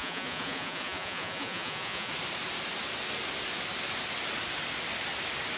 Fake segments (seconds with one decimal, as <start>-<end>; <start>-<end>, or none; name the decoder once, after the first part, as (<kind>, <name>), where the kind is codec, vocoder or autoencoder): 0.0-2.1 (vocoder, Vocos)